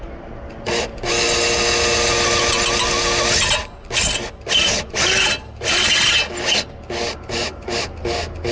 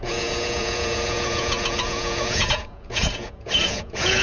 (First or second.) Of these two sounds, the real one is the first